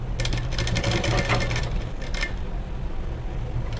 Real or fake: real